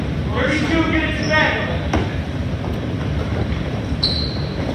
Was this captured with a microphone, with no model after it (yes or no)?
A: no